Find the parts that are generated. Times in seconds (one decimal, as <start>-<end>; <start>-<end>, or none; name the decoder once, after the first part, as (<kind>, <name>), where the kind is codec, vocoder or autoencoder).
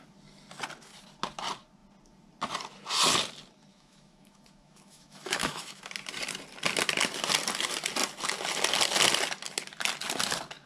3.7-5.8 (autoencoder, DAC-VAE)